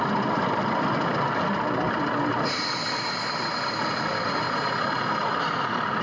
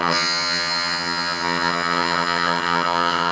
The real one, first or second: first